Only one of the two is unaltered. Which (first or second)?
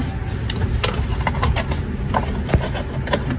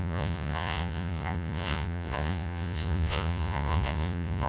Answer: first